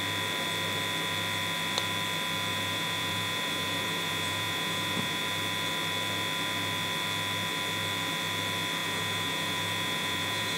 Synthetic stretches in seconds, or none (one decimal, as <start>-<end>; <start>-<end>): 2.5-5.2; 8.8-10.6